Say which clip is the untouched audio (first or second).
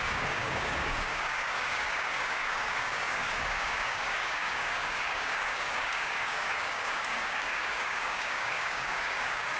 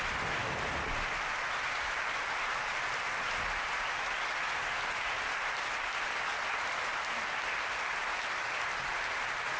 second